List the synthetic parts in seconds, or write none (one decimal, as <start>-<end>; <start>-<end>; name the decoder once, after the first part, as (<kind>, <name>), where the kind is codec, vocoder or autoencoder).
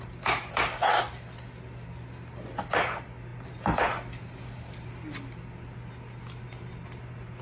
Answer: 0.4-1.0 (vocoder, BigVGAN v2)